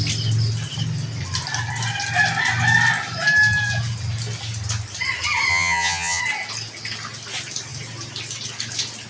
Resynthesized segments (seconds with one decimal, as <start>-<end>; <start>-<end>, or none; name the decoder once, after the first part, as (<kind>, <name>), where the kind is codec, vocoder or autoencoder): 5.5-6.2 (vocoder, HiFi-GAN)